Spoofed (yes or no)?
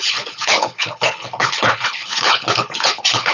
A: yes